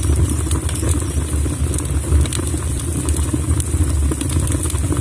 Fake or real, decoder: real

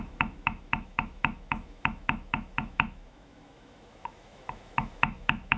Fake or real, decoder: fake, autoencoder, DAC-VAE